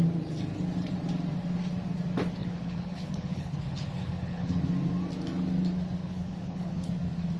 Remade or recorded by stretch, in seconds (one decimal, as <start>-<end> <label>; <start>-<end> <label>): 0.0-2.4 recorded; 2.4-4.6 remade; 4.6-6.0 recorded; 6.0-6.9 remade; 6.9-7.4 recorded